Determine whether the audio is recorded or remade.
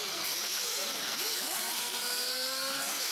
remade